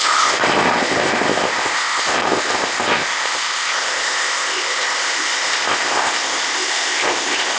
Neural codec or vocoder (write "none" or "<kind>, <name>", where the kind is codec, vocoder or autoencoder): codec, ZipCodec